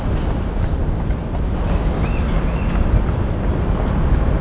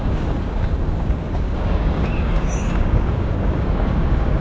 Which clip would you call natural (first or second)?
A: first